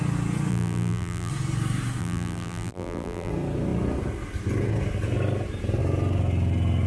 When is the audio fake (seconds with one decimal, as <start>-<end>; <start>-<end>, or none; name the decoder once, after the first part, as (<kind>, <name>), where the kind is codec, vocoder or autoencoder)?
0.5-1.3 (vocoder, BigVGAN v2); 2.0-3.3